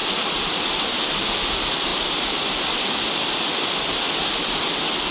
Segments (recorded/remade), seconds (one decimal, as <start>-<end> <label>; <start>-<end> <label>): 0.0-5.1 recorded